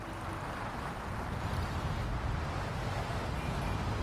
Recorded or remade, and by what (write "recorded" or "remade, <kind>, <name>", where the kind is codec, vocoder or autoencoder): remade, vocoder, BigVGAN v2